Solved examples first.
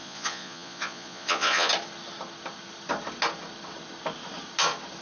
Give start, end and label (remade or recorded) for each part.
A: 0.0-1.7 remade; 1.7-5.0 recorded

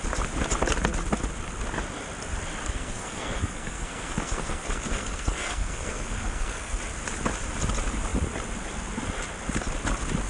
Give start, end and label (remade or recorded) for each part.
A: 0.0-2.6 recorded; 2.6-6.8 remade; 6.8-10.3 recorded

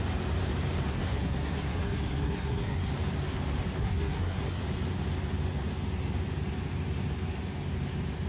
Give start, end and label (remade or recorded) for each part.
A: 0.0-0.9 recorded; 0.9-2.9 remade; 2.9-3.8 recorded; 3.8-4.6 remade; 4.6-8.3 recorded